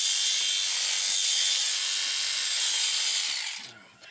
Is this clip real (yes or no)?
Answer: yes